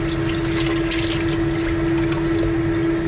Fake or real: real